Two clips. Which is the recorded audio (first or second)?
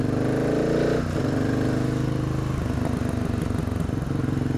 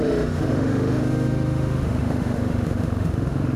first